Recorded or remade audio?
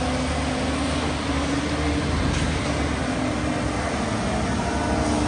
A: recorded